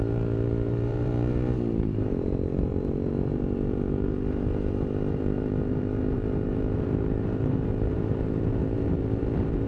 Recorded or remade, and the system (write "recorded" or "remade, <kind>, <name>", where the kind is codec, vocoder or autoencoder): remade, vocoder, BigVGAN v2